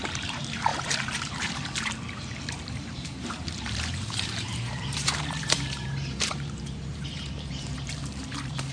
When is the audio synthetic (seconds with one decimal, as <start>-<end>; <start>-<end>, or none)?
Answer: 0.0-8.7